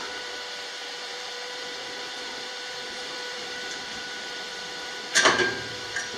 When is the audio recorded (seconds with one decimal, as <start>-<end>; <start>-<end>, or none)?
none